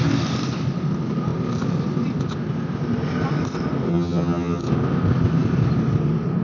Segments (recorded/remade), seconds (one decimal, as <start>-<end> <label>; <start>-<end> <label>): 0.0-3.9 recorded; 3.9-4.6 remade; 4.6-6.4 recorded